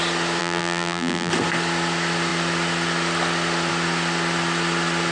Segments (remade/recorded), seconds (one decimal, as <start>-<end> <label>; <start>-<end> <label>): 0.0-0.4 recorded; 0.4-1.3 remade; 1.3-5.1 recorded

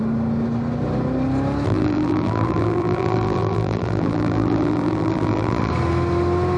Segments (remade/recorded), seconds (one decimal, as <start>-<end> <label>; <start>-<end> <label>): 0.0-1.7 recorded; 1.7-5.7 remade; 5.7-6.6 recorded

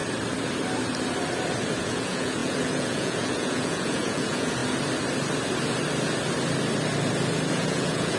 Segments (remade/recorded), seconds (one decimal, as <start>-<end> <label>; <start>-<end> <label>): 0.0-1.8 recorded; 1.8-4.6 remade; 4.6-7.5 recorded; 7.5-8.2 remade

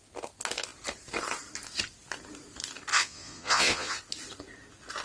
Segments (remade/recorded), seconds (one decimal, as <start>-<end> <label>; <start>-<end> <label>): 0.0-2.9 recorded; 2.9-4.0 remade; 4.0-5.0 recorded

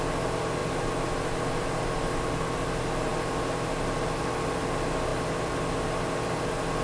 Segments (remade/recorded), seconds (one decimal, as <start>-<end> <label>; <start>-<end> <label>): 0.0-6.8 recorded

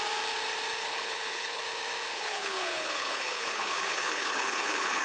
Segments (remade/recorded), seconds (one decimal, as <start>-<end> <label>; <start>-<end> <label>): 0.0-0.8 recorded; 0.8-1.6 remade; 1.6-2.1 recorded; 2.1-5.0 remade

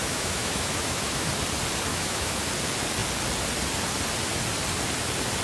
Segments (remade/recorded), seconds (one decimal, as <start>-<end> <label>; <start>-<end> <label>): 0.0-1.3 remade; 1.3-1.9 recorded; 1.9-2.5 remade; 2.5-5.4 recorded

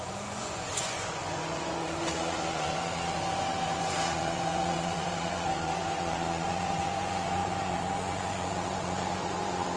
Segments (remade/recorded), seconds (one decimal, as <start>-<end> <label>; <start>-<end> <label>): 0.0-9.8 remade